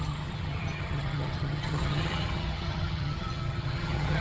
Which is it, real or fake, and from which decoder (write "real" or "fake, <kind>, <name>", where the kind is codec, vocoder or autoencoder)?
fake, vocoder, HiFi-GAN